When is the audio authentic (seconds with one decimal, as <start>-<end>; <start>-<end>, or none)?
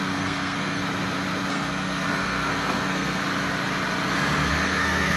0.8-1.5; 3.2-4.5